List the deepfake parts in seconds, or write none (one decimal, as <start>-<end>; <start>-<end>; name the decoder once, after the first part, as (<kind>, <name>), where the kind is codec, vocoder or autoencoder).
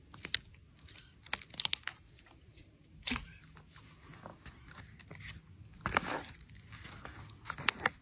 1.9-3.8 (vocoder, BigVGAN v2)